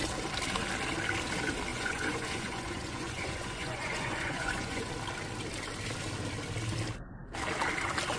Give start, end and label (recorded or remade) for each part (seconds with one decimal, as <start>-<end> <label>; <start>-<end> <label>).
0.0-1.7 recorded; 1.7-4.9 remade; 4.9-8.2 recorded